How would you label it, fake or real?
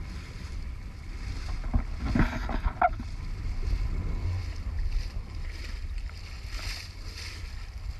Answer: real